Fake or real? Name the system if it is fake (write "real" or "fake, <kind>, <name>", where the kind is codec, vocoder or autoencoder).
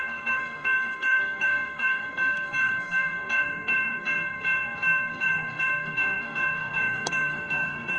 fake, codec, SNAC